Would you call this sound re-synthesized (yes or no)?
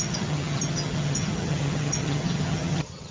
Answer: yes